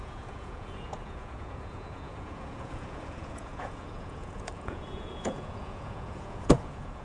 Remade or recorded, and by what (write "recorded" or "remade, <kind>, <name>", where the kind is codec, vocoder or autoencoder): remade, vocoder, Vocos